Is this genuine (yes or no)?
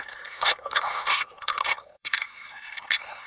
no